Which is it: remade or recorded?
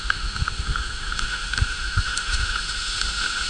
remade